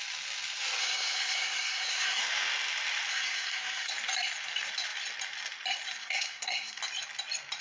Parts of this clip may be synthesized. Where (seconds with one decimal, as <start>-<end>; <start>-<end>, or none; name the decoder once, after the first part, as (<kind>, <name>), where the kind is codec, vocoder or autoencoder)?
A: 0.8-2.2 (codec, SNAC); 3.1-3.9; 6.0-6.8